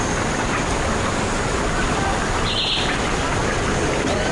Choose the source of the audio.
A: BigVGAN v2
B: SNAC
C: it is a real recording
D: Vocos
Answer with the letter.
C